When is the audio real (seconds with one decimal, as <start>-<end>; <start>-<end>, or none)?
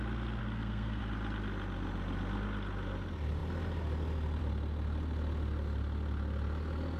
0.0-0.4; 1.0-7.0